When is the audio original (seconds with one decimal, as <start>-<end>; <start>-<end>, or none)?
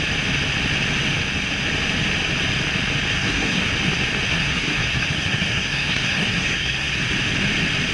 0.0-3.1; 3.7-4.3; 7.0-7.9